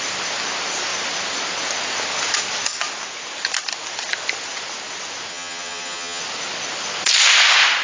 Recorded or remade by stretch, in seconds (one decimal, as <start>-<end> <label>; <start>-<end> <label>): 0.0-5.3 recorded; 5.3-6.2 remade; 6.2-7.8 recorded

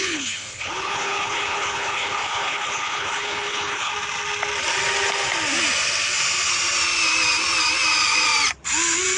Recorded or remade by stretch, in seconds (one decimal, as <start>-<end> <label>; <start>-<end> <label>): 0.0-3.9 remade; 3.9-9.2 recorded

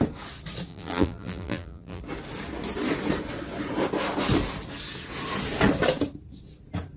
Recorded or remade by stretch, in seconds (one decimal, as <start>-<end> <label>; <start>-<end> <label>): 0.0-0.7 recorded; 0.7-2.0 remade; 2.0-7.0 recorded

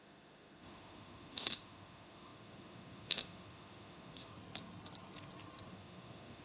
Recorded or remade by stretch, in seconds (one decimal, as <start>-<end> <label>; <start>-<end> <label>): 0.0-4.3 remade; 4.3-5.7 recorded; 5.7-6.4 remade

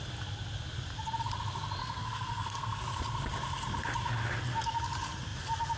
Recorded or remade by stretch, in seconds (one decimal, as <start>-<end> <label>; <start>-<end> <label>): 0.0-1.8 recorded; 1.8-2.8 remade; 2.8-5.8 recorded

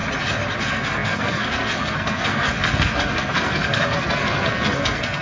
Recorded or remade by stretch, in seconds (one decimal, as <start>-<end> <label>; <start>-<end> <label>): 0.0-0.6 recorded; 0.6-5.2 remade

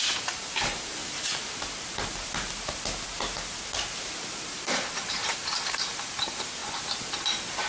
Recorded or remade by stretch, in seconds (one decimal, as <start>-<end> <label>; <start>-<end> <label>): 0.0-1.0 remade; 1.0-5.0 recorded; 5.0-6.6 remade; 6.6-7.7 recorded

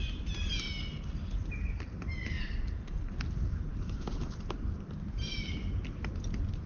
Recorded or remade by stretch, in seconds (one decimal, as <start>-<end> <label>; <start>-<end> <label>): 0.0-6.7 recorded